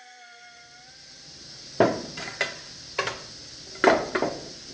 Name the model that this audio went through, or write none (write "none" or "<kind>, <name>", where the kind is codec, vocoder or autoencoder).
none